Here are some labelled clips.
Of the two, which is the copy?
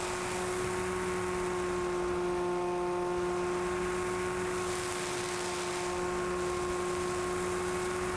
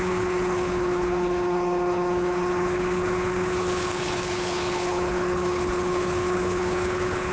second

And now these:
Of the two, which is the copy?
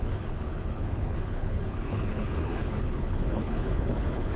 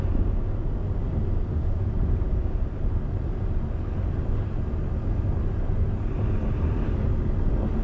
first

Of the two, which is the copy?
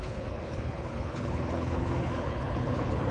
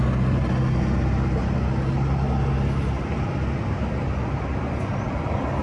first